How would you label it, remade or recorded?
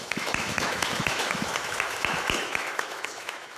remade